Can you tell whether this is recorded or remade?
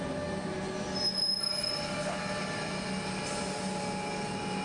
recorded